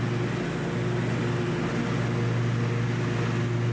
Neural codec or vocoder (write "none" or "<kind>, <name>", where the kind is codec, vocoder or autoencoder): none